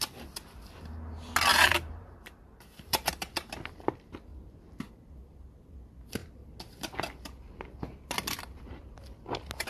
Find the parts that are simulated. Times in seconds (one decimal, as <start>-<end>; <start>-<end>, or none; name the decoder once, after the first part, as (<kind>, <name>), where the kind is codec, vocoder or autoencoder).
1.5-3.1 (vocoder, BigVGAN v2)